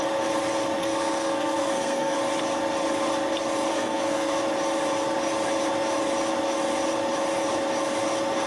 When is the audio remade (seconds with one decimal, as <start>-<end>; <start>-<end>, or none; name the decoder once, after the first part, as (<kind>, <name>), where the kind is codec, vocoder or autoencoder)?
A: 0.8-2.2 (codec, SNAC); 3.7-4.4